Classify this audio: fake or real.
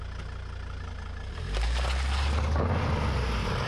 real